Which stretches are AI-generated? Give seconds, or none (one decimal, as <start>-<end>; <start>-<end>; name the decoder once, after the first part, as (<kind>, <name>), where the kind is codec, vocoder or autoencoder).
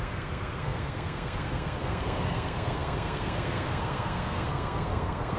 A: 0.0-5.4 (codec, SNAC)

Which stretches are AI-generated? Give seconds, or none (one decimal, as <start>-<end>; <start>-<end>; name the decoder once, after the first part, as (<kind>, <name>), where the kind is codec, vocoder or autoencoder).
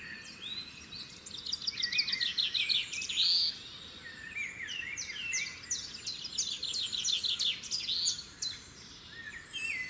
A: none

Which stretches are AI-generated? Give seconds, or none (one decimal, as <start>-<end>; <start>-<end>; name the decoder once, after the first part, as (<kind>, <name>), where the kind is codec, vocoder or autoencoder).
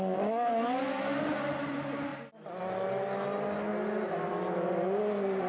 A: none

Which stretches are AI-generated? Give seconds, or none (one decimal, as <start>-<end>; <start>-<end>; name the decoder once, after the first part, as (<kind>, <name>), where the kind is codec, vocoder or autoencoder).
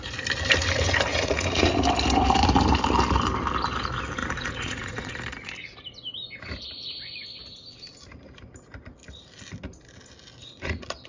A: 1.1-1.7 (vocoder, Vocos); 4.2-5.1; 10.4-11.1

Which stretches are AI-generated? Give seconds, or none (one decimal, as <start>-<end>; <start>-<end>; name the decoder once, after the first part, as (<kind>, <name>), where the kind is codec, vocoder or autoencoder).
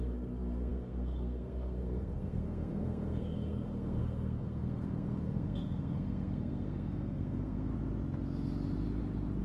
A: 0.0-7.7 (codec, SNAC)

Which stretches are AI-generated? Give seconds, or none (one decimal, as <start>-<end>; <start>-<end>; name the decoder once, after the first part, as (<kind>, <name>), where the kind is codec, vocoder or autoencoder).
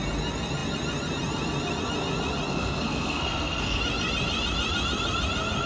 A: 2.5-3.8 (codec, SNAC)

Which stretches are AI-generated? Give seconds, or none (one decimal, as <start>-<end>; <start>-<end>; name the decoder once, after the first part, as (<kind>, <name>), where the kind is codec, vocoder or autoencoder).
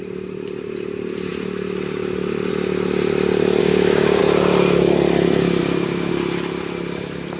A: 3.6-4.2 (codec, DAC); 5.6-6.1